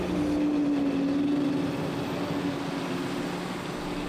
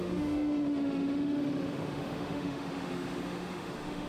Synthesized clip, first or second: second